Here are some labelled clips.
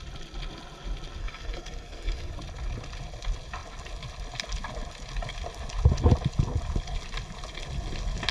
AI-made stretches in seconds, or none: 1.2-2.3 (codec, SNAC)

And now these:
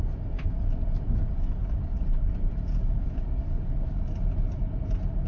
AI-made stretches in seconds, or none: 1.6-3.4 (vocoder, BigVGAN v2)

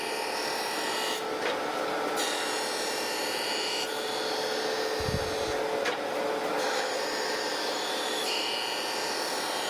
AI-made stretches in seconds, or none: 6.5-8.4 (autoencoder, DAC-VAE)

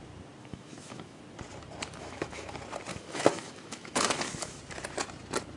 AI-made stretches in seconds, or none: 0.4-1.2 (autoencoder, DAC-VAE); 2.0-2.5; 2.9-4.6

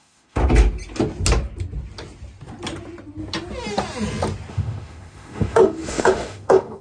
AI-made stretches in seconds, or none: 0.0-0.4 (autoencoder, DAC-VAE); 4.5-6.8

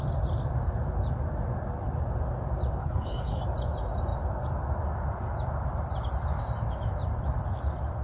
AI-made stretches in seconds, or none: 2.8-3.4 (codec, HILCodec)

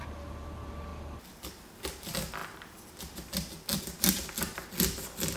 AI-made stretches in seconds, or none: none